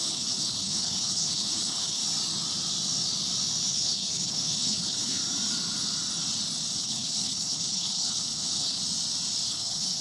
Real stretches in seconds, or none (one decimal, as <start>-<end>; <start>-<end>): 2.0-3.7; 5.2-6.8; 8.8-9.5

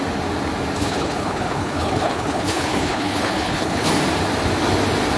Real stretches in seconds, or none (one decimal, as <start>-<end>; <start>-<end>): 0.0-0.8; 3.9-5.2

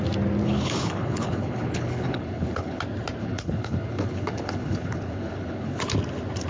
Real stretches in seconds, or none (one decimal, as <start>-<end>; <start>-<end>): 0.0-0.4; 2.8-3.2; 5.8-6.5

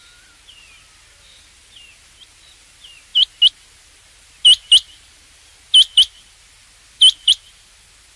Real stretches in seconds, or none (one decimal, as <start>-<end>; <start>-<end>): 0.0-8.2

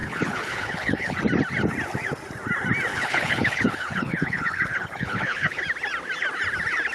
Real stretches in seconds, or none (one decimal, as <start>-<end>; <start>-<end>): 1.2-2.9; 5.6-6.9

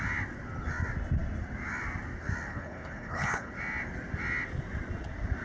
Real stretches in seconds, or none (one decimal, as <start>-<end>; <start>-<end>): 0.0-2.5; 3.5-5.4